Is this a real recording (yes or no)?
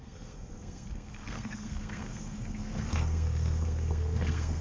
no